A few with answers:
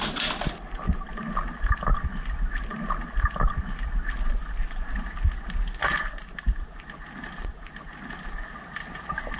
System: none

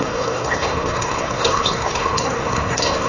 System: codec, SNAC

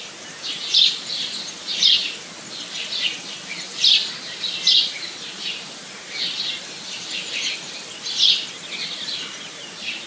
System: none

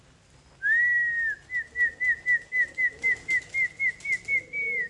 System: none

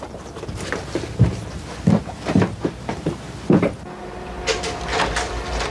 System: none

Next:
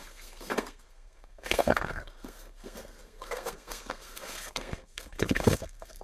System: codec, SNAC